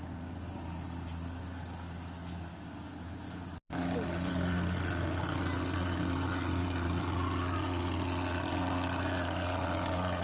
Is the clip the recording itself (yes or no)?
yes